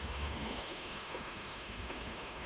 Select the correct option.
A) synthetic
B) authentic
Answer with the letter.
A